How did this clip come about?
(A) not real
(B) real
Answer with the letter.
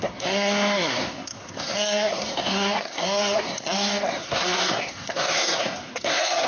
A